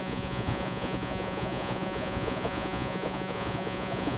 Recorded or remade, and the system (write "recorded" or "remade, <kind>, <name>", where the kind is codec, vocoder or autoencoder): remade, vocoder, Vocos